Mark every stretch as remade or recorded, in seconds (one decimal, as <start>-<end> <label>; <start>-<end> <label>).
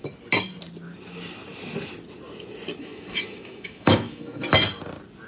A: 0.0-2.8 recorded; 2.8-4.4 remade; 4.4-5.3 recorded